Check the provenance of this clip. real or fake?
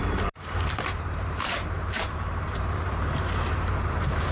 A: fake